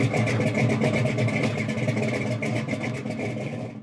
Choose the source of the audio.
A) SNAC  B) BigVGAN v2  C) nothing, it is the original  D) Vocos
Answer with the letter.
C